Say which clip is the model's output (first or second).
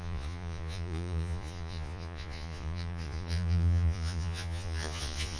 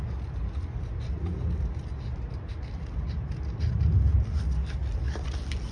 first